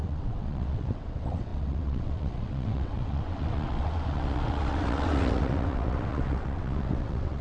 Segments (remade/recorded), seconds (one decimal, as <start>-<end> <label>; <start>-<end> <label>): 0.0-7.4 remade

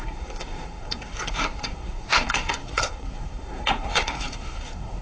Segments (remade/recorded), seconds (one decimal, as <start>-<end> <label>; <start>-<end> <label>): 0.0-5.0 remade

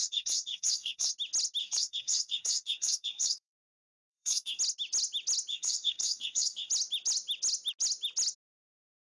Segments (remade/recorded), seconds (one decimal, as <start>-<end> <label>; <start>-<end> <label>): 0.0-1.1 remade; 1.1-1.6 recorded; 1.6-4.6 remade; 4.6-5.5 recorded; 5.5-6.7 remade; 6.7-9.2 recorded

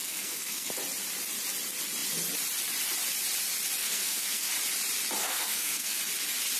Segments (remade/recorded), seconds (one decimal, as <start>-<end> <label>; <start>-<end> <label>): 0.0-0.7 remade; 0.7-3.8 recorded; 3.8-4.5 remade; 4.5-5.2 recorded; 5.2-6.0 remade; 6.0-6.6 recorded

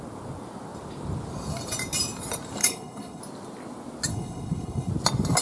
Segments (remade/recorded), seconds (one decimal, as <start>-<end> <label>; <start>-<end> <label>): 0.0-2.6 recorded; 2.6-3.2 remade; 3.2-4.1 recorded; 4.1-4.9 remade; 4.9-5.4 recorded

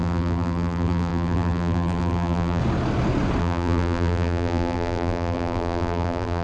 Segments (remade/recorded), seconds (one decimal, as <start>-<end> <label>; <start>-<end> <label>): 0.0-2.6 remade; 2.6-3.4 recorded; 3.4-6.4 remade

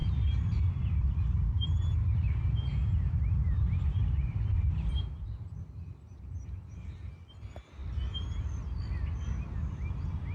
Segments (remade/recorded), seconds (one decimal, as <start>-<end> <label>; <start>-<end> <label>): 0.0-7.8 remade; 7.8-9.6 recorded; 9.6-10.3 remade